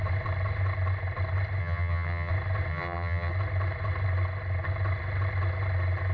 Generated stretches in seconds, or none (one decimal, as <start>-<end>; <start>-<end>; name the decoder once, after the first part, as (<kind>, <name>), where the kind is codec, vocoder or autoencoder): 1.6-2.3 (vocoder, HiFi-GAN); 2.7-3.3